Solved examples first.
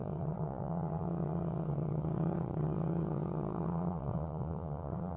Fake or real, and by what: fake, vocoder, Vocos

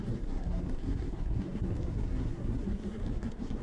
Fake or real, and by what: fake, codec, SNAC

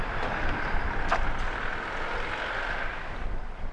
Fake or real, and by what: real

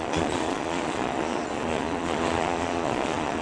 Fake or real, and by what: fake, vocoder, Vocos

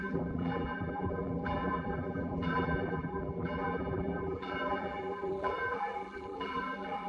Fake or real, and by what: fake, vocoder, BigVGAN v2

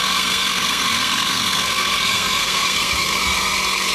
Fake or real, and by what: fake, codec, SNAC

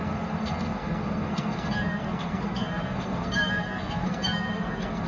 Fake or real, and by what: fake, codec, SNAC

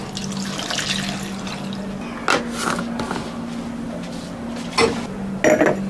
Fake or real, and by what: real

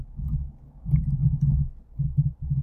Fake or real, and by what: real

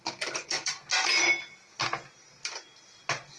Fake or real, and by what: real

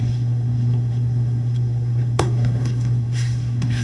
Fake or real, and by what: fake, codec, SNAC